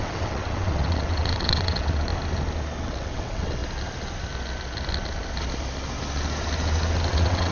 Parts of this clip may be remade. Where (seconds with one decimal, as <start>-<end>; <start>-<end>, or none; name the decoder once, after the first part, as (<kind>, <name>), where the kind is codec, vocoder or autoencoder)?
0.0-2.1 (vocoder, WaveNeXt); 2.8-3.6; 7.1-7.5